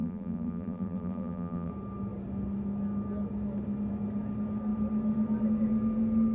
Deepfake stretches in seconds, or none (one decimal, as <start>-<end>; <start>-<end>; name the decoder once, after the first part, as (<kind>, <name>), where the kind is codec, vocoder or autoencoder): 0.0-1.7 (vocoder, BigVGAN v2)